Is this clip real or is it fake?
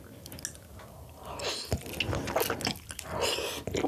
real